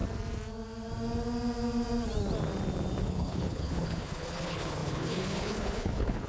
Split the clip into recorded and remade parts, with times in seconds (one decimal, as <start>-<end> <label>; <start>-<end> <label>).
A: 0.0-3.0 recorded; 3.0-6.3 remade